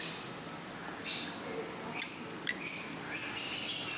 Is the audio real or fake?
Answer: real